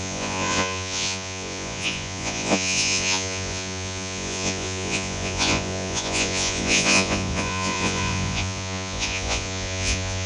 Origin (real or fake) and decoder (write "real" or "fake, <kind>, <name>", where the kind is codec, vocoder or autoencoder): fake, vocoder, Vocos